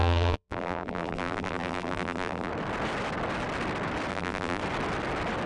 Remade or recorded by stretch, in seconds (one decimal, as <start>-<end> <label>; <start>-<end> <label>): 0.0-2.5 remade; 2.5-4.1 recorded; 4.1-4.6 remade; 4.6-5.5 recorded